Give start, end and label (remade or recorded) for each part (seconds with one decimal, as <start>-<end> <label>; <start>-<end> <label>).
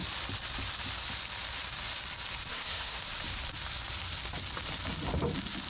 0.0-2.5 recorded; 2.5-3.0 remade; 3.0-5.7 recorded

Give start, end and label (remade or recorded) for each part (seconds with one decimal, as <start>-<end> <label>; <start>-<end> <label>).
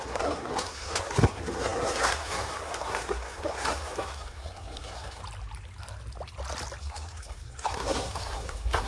0.0-5.2 remade; 5.2-6.8 recorded; 6.8-8.9 remade